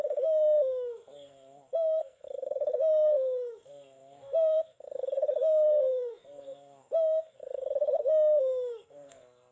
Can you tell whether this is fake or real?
fake